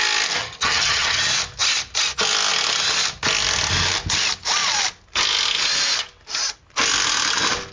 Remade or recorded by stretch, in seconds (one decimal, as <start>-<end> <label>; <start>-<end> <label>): 0.0-0.4 recorded; 0.4-1.2 remade; 1.2-7.7 recorded